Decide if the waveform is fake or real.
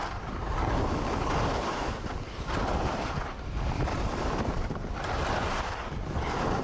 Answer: real